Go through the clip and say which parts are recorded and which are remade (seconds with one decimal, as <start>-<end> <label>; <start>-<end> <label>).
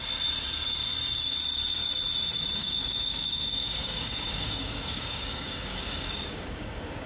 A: 0.0-2.6 recorded; 2.6-7.1 remade